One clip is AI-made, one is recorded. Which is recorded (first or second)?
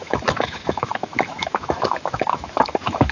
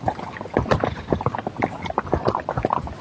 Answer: second